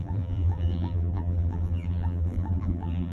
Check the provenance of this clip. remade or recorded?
remade